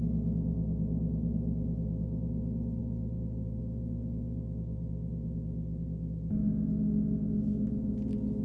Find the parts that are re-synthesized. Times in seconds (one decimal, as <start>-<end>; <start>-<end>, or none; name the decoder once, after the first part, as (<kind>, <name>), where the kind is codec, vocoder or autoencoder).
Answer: none